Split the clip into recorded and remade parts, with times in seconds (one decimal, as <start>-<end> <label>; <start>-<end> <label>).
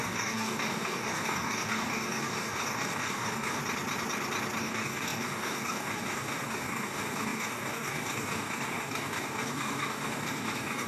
0.0-3.6 remade; 3.6-4.6 recorded; 4.6-10.9 remade